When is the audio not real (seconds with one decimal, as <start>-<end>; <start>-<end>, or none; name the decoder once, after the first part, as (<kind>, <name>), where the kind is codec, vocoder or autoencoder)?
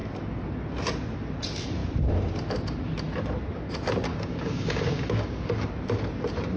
4.1-5.7 (codec, DAC)